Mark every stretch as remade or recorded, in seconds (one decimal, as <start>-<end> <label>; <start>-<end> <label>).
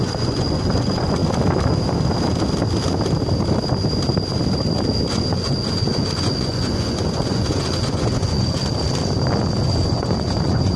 0.0-1.2 remade; 1.2-5.1 recorded; 5.1-8.6 remade; 8.6-9.6 recorded; 9.6-10.8 remade